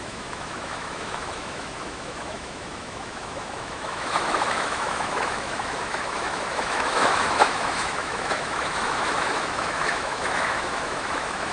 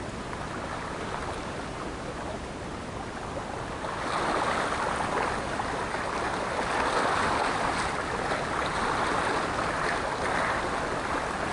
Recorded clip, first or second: second